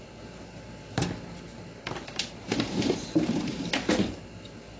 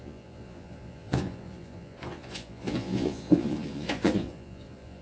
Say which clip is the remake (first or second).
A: second